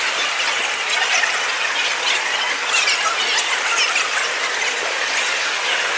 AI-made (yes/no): no